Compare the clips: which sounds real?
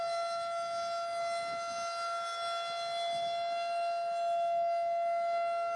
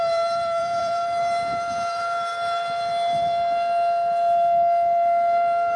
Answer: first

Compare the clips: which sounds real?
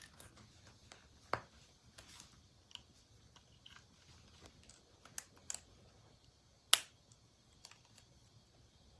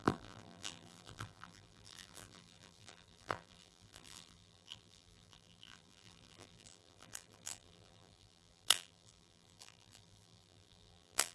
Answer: first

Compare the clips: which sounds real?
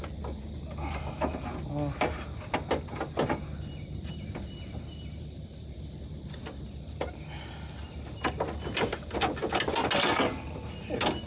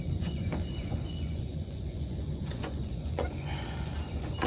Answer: first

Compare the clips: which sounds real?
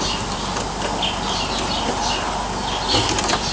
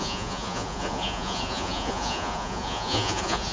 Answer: first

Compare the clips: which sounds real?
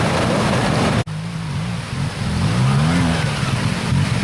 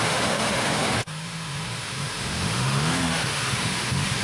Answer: first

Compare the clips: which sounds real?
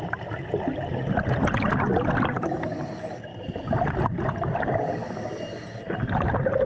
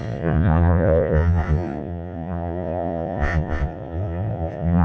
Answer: first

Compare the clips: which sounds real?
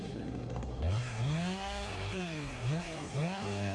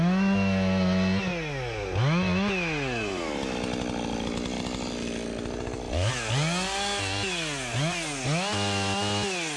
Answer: second